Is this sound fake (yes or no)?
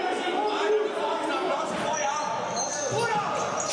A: no